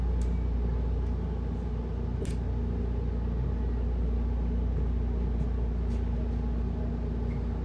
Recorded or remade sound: recorded